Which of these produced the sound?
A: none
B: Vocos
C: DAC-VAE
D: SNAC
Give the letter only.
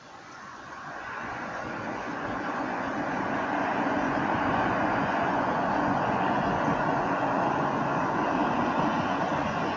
B